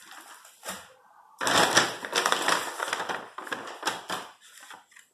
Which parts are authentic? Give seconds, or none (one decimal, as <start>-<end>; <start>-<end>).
0.0-5.1